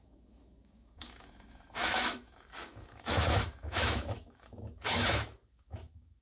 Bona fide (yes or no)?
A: no